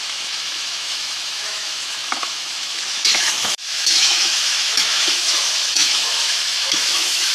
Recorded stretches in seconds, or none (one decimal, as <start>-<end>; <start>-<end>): none